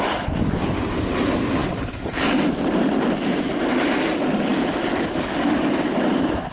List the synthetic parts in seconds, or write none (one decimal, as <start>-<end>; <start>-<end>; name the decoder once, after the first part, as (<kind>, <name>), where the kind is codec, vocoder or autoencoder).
none